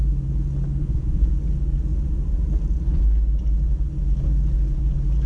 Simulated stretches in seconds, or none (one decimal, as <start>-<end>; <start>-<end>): 0.8-1.3